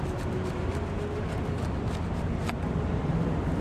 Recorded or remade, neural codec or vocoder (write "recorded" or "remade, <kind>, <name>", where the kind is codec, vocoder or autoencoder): recorded